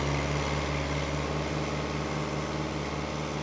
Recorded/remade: recorded